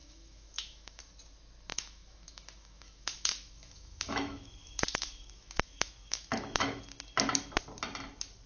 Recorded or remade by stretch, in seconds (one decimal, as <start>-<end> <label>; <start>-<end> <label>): 0.0-1.0 remade; 1.0-1.7 recorded; 1.7-6.8 remade; 6.8-8.5 recorded